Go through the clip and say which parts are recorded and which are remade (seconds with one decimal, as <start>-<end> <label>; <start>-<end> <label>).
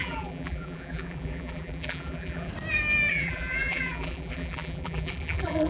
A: 0.0-2.5 remade; 2.5-3.1 recorded; 3.1-5.7 remade